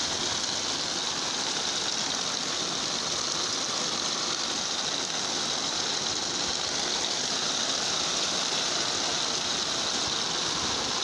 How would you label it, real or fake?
real